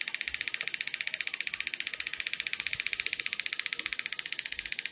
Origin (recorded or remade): recorded